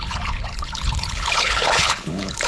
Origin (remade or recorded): remade